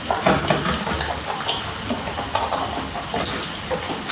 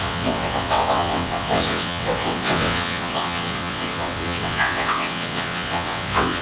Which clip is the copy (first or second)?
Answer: second